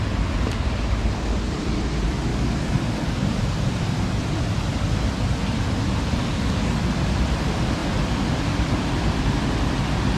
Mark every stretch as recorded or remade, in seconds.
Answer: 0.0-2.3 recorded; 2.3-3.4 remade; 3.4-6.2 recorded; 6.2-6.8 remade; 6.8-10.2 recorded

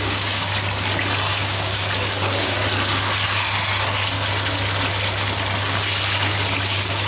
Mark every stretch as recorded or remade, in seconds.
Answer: 0.0-0.5 remade; 0.5-1.4 recorded; 1.4-2.6 remade; 2.6-6.6 recorded; 6.6-7.1 remade